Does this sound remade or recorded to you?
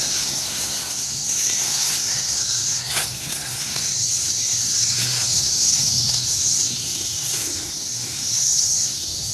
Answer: remade